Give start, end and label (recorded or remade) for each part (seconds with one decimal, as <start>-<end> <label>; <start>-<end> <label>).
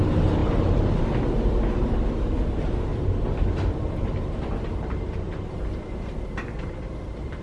0.0-0.4 recorded; 0.4-1.0 remade; 1.0-2.9 recorded; 2.9-7.4 remade